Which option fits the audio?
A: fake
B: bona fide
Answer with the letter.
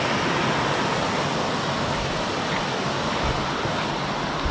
B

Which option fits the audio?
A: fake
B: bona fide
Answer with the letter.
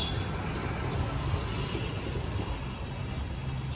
B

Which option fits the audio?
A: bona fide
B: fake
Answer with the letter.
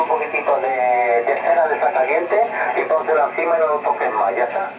A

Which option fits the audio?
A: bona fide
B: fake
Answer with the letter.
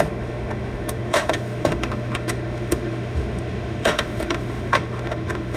B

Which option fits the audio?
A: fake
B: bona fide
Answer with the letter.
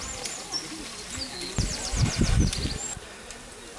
B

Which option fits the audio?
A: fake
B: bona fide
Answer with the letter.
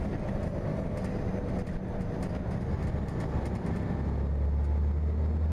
B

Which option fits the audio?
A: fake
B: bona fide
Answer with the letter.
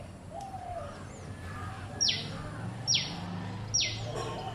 B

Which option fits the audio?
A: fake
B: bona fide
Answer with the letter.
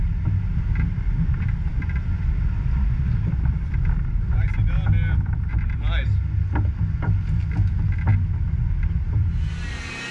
B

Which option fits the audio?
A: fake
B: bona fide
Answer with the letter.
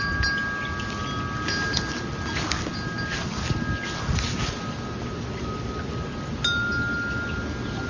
B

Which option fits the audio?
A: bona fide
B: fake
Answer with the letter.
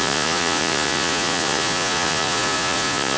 B